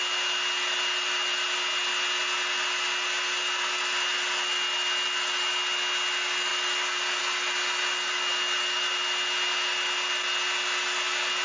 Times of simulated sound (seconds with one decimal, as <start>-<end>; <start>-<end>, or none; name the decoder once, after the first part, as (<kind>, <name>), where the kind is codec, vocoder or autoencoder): none